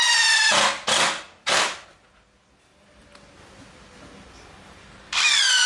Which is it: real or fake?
real